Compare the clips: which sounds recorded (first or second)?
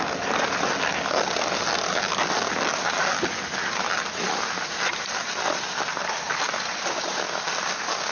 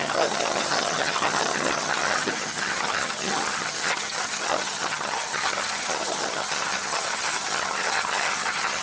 first